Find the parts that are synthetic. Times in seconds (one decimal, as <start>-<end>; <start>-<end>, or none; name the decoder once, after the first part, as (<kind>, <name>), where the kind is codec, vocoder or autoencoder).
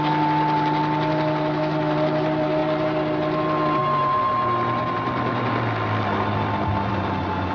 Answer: none